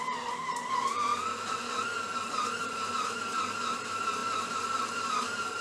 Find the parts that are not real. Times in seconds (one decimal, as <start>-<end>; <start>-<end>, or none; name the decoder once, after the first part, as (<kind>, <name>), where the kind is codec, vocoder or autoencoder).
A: 0.0-1.1 (vocoder, BigVGAN v2); 2.6-5.6